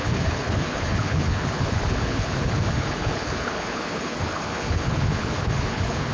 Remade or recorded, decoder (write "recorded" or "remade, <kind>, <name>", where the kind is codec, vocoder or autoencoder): remade, codec, HILCodec